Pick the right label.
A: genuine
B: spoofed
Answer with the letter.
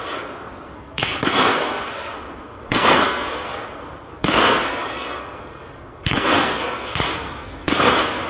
B